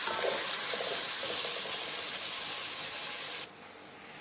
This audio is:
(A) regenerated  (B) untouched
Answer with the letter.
B